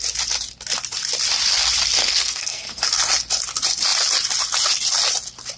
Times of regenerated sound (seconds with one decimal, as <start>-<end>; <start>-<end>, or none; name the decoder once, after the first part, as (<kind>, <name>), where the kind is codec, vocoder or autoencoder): 2.0-2.8 (codec, SNAC)